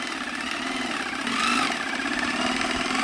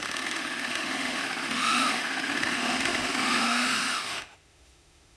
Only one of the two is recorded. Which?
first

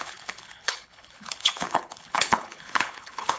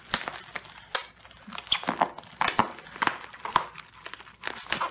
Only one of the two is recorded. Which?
second